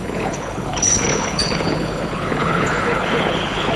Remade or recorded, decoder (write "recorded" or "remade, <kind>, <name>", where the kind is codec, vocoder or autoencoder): remade, codec, HILCodec